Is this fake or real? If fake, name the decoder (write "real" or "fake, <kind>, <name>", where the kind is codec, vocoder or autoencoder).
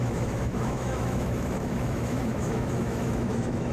fake, autoencoder, DAC-VAE